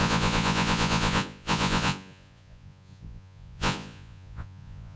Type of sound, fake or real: fake